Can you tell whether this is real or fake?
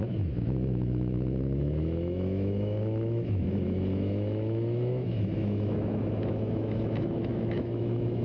fake